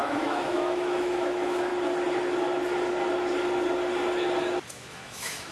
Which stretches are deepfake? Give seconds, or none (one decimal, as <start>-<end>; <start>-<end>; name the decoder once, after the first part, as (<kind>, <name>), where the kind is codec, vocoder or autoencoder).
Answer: 0.0-1.7 (autoencoder, DAC-VAE); 4.7-5.5